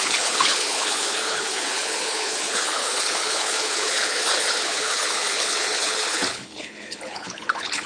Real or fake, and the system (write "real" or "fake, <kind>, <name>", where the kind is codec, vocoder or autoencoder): fake, codec, HILCodec